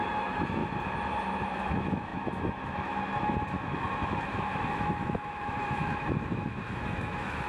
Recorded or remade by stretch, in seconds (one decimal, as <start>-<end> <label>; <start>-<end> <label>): 0.0-0.6 remade; 0.6-1.6 recorded; 1.6-7.5 remade